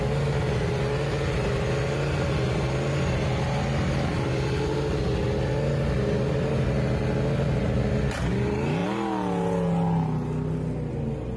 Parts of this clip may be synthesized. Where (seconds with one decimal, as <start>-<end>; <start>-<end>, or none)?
none